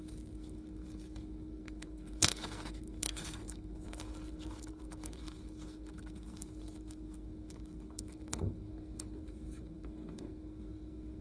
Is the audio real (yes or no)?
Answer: no